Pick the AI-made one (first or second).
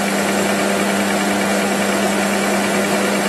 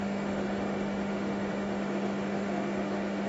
second